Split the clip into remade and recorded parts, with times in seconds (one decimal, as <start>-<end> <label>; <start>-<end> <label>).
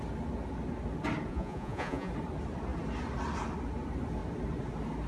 0.0-1.3 recorded; 1.3-2.1 remade; 2.1-5.1 recorded